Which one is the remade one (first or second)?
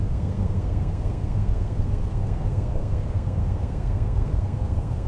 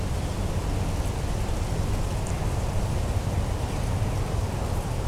first